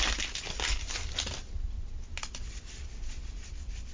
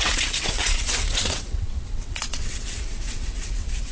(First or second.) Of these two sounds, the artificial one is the second